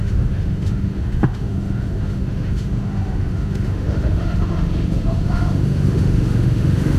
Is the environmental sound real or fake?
fake